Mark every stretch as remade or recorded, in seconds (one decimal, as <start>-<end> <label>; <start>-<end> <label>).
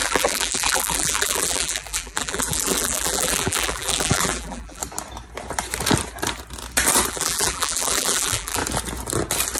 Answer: 0.0-4.8 remade; 4.8-7.1 recorded; 7.1-8.6 remade; 8.6-9.6 recorded